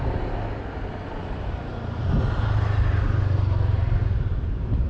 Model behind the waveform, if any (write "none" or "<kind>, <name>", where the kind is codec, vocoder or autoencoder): none